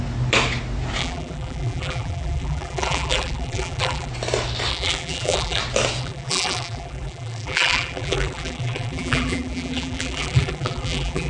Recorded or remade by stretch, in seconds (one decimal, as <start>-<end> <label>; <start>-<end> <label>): 0.0-1.0 recorded; 1.0-4.1 remade; 4.1-4.7 recorded; 4.7-5.6 remade; 5.6-6.0 recorded; 6.0-11.3 remade